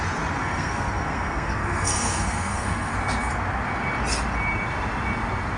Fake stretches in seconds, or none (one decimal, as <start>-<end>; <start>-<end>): 0.4-2.9